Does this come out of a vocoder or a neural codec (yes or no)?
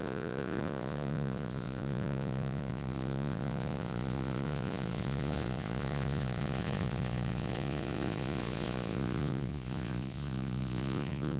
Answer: yes